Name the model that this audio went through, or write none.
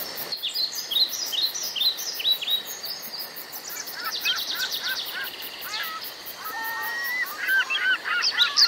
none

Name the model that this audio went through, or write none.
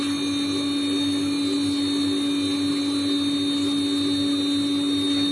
none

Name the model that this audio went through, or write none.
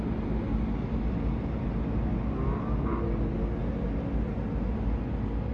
none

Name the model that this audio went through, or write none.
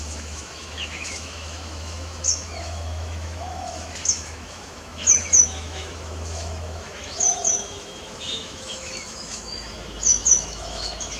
autoencoder, DAC-VAE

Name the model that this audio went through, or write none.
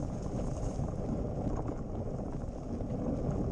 none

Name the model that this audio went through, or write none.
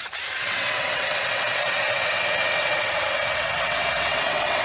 vocoder, WaveNeXt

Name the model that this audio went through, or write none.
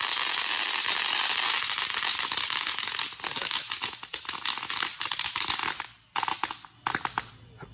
none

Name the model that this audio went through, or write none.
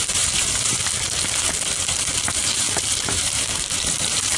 vocoder, BigVGAN v2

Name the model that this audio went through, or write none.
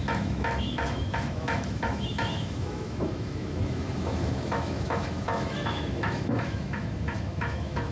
autoencoder, DAC-VAE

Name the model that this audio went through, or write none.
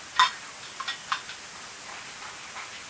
none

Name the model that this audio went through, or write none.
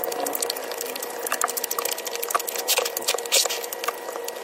none